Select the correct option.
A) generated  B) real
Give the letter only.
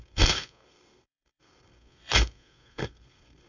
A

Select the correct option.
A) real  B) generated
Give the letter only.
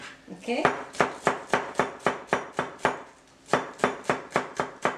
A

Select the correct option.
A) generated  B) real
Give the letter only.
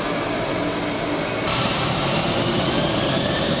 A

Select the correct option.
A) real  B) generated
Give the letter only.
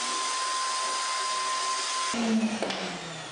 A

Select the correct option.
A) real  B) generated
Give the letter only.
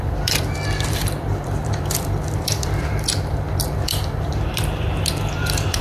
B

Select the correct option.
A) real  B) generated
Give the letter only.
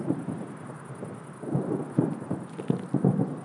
B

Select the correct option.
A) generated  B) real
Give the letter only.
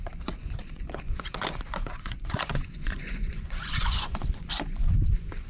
A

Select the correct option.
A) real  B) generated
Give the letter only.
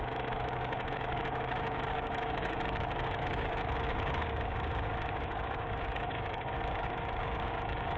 B